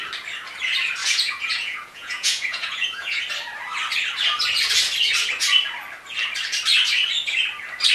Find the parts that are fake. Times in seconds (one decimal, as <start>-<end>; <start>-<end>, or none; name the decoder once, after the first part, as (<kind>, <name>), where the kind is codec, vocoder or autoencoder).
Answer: 1.0-3.2 (vocoder, Vocos)